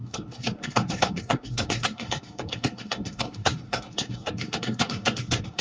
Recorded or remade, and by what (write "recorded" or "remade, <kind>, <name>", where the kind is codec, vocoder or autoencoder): remade, codec, SNAC